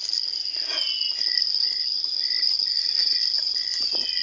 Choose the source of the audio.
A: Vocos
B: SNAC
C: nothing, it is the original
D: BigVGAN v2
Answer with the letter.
C